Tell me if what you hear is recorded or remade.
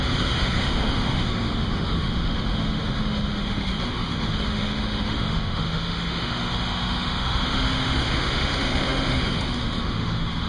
remade